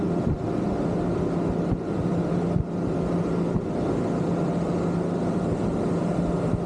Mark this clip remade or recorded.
recorded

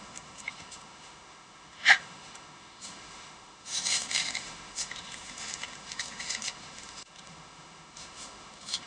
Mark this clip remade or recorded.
remade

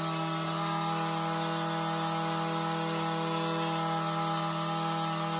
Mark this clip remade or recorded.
recorded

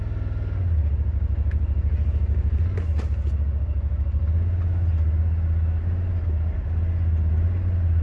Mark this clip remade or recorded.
recorded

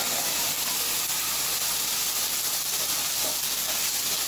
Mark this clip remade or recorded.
recorded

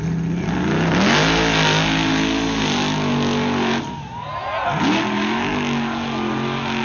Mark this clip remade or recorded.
recorded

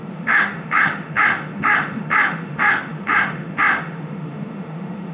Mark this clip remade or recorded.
remade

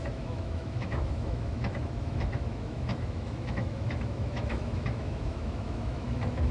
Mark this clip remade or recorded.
remade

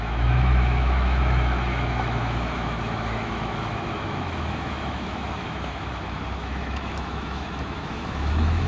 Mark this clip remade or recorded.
remade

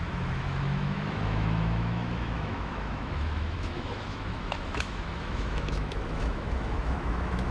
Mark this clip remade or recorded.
remade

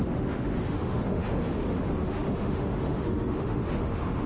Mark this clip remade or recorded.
remade